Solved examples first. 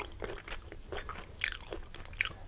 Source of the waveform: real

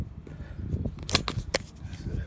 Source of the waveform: real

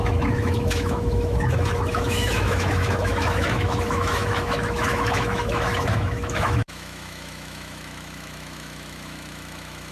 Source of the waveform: fake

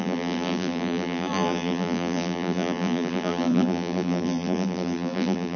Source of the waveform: fake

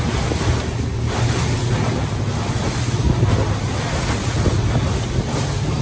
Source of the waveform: real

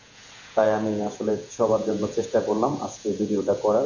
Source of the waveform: fake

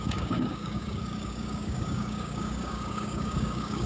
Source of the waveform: fake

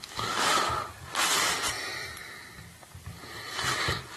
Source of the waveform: real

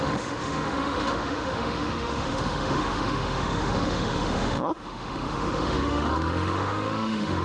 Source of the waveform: fake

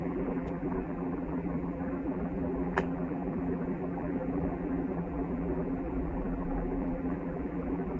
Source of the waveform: fake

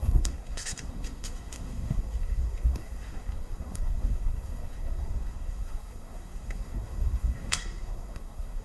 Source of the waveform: fake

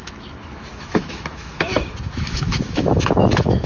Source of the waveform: fake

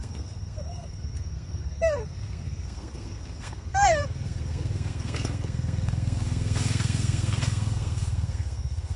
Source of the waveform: fake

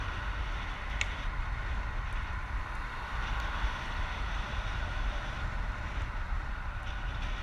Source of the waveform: real